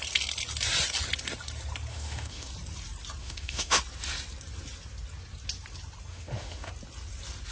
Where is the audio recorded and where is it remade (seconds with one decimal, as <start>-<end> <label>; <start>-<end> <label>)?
0.0-1.9 recorded; 1.9-2.5 remade; 2.5-3.2 recorded; 3.2-3.8 remade; 3.8-6.1 recorded; 6.1-6.7 remade; 6.7-7.5 recorded